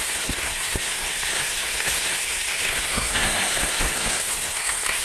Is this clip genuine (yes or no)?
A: no